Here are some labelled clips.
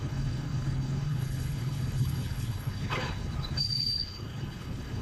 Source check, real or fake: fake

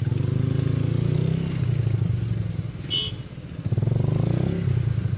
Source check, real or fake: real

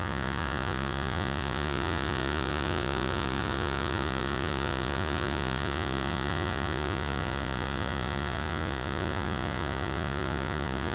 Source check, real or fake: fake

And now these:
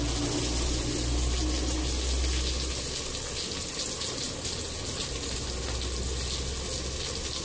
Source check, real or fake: real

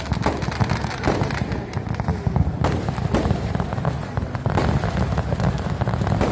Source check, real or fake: real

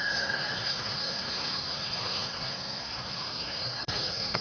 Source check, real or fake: fake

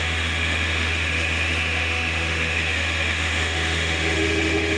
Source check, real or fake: fake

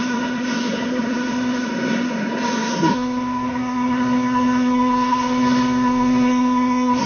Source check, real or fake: fake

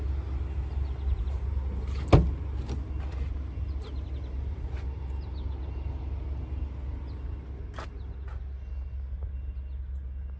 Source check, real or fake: real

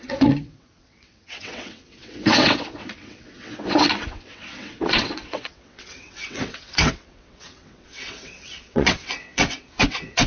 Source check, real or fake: fake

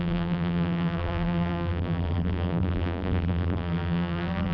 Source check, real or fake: fake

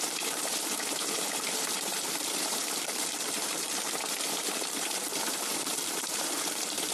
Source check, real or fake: fake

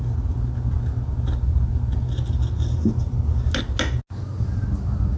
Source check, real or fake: real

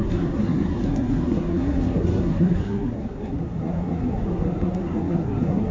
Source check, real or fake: fake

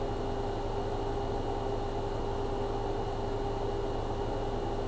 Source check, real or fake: real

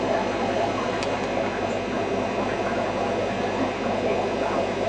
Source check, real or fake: real